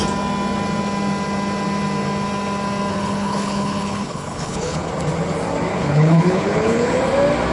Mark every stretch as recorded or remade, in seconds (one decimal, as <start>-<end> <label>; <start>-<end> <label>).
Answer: 0.0-2.9 recorded; 2.9-4.9 remade; 4.9-5.7 recorded; 5.7-7.0 remade; 7.0-7.5 recorded